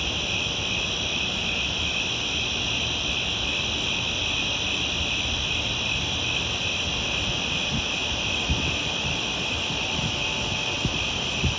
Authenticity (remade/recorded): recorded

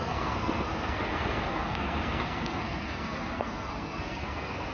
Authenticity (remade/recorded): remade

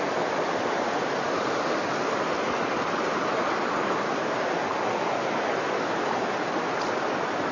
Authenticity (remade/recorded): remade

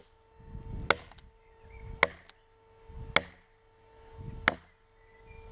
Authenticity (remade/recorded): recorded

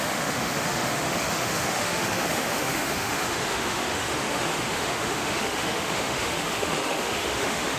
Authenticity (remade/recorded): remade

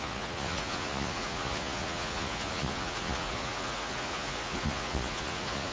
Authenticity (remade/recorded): remade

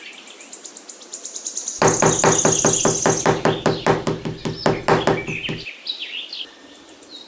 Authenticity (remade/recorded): recorded